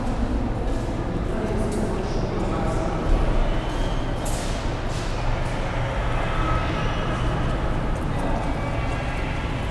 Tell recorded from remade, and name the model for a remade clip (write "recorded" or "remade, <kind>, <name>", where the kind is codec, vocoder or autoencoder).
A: recorded